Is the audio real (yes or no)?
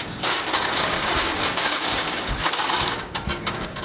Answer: no